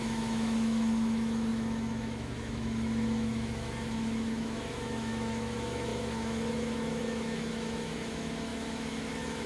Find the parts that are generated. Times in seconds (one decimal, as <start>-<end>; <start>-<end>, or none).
0.0-9.5